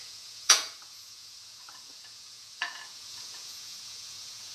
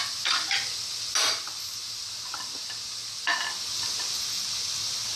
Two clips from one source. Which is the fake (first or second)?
first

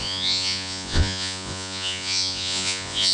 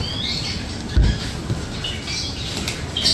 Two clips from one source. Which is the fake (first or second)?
first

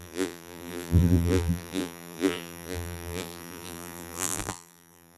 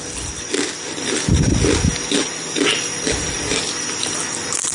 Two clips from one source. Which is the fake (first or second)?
first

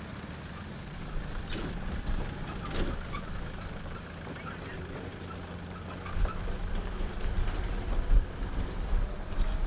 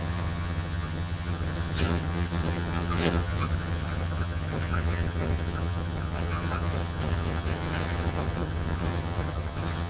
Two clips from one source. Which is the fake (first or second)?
second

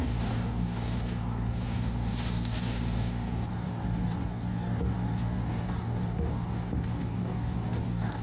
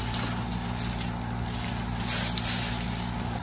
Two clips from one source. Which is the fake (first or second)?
first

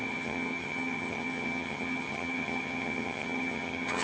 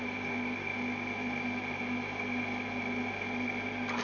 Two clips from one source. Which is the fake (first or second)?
first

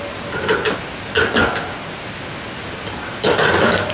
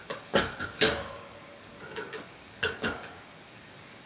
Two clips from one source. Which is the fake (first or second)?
second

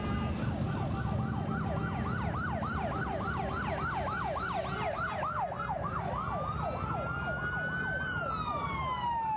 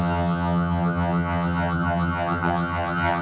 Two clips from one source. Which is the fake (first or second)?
second